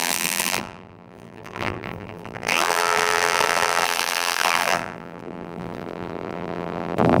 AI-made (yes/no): yes